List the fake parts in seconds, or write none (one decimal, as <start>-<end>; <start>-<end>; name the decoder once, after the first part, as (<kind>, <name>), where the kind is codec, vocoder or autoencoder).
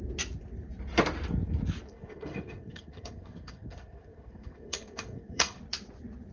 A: 1.9-5.6 (codec, SNAC)